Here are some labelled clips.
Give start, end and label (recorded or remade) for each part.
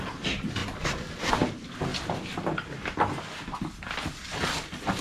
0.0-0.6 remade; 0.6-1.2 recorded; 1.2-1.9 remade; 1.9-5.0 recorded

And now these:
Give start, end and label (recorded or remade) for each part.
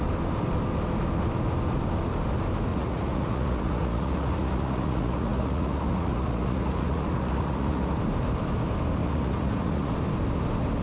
0.0-2.7 recorded; 2.7-7.9 remade; 7.9-9.0 recorded; 9.0-9.9 remade; 9.9-10.8 recorded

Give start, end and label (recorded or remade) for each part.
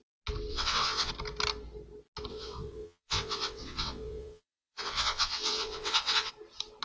0.0-0.5 recorded; 0.5-1.1 remade; 1.1-2.3 recorded; 2.3-6.3 remade; 6.3-6.8 recorded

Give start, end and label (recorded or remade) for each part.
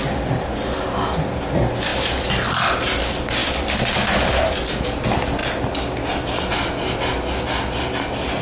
0.0-8.4 recorded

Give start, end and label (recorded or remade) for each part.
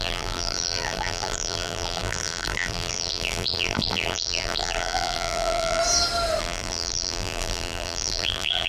0.0-5.8 remade; 5.8-6.4 recorded; 6.4-8.7 remade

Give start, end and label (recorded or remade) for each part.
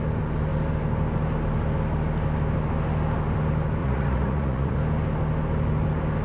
0.0-3.8 recorded; 3.8-4.8 remade; 4.8-6.2 recorded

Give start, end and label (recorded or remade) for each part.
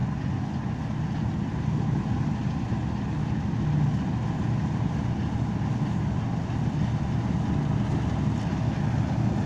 0.0-0.7 remade; 0.7-9.5 recorded